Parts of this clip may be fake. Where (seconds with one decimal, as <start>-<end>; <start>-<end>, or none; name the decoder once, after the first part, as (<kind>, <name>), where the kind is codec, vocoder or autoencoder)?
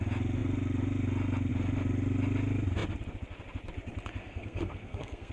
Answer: 4.2-5.3 (codec, SNAC)